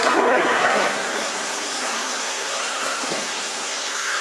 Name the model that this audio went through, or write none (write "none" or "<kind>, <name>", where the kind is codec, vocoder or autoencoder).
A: codec, SNAC